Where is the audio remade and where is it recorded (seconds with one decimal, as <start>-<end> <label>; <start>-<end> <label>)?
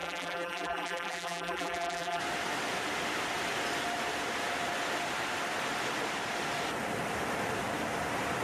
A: 0.0-2.2 remade; 2.2-8.4 recorded